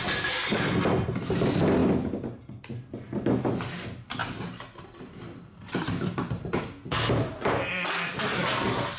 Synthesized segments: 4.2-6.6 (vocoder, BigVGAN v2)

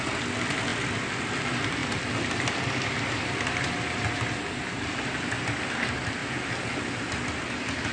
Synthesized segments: none

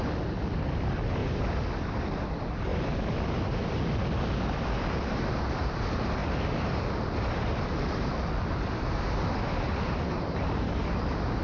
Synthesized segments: 1.2-2.0 (vocoder, BigVGAN v2); 10.1-10.8